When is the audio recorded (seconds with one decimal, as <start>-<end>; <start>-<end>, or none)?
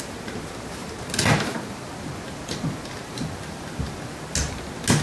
0.0-5.0